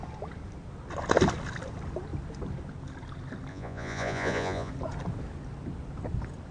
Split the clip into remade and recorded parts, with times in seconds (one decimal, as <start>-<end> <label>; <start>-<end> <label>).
0.0-3.5 recorded; 3.5-4.7 remade; 4.7-6.5 recorded